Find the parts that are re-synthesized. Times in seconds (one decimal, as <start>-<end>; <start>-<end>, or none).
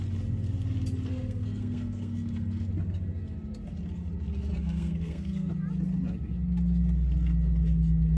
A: 1.1-2.7; 4.5-5.5